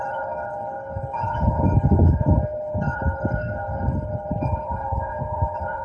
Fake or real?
fake